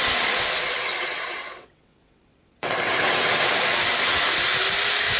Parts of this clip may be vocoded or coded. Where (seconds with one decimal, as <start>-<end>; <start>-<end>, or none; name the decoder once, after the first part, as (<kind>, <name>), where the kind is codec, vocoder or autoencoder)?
0.7-3.8 (vocoder, WaveNeXt)